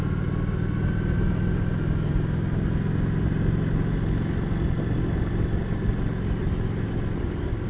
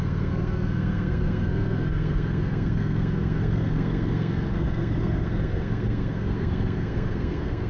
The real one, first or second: first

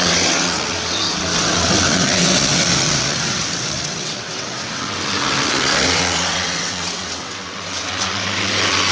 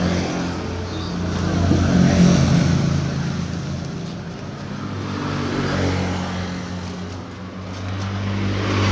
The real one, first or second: second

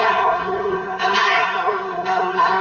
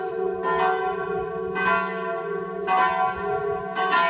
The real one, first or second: second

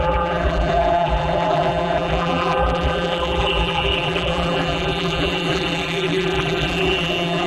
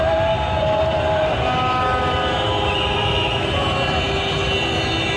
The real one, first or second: second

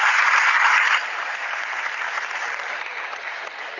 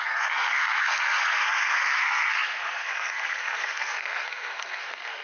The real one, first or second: first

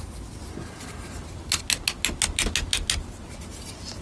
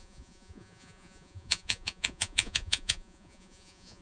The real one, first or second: first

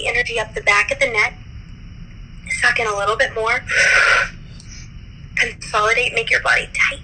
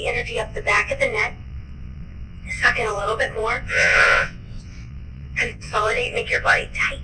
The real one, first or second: first